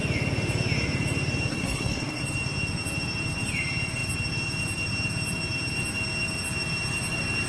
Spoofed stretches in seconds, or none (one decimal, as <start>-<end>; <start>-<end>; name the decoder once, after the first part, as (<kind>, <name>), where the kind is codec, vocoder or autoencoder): 1.5-2.2 (codec, SNAC)